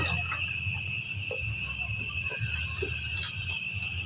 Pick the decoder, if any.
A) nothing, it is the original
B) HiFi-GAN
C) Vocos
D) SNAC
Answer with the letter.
A